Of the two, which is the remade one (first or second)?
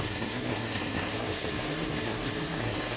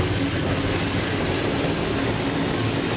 first